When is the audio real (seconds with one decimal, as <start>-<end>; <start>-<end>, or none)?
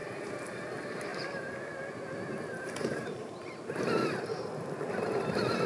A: 0.6-2.9; 3.4-5.7